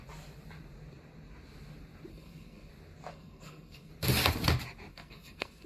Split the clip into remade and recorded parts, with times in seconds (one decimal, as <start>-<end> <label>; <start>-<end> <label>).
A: 0.0-2.1 recorded; 2.1-2.7 remade; 2.7-3.1 recorded; 3.1-3.9 remade; 3.9-4.9 recorded; 4.9-5.7 remade